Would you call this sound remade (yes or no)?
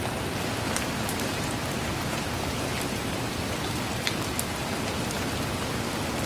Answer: no